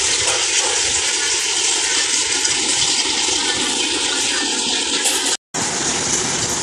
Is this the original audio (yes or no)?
yes